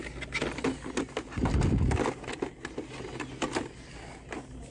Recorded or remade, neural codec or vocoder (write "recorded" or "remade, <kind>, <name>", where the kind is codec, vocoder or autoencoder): recorded